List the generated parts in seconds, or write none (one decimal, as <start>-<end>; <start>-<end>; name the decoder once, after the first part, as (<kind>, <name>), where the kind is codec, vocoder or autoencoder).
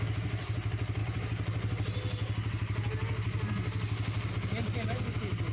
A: none